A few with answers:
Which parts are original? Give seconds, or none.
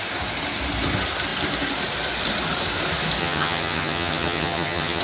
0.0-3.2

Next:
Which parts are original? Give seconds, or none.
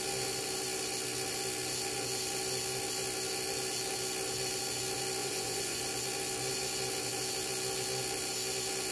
0.0-5.2; 5.8-8.9